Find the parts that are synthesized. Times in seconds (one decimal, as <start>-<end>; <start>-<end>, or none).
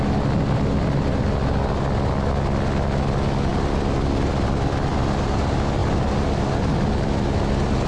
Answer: none